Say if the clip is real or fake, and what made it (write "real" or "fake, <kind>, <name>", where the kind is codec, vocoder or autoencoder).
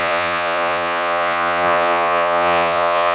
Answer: fake, vocoder, Vocos